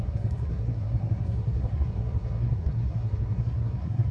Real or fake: fake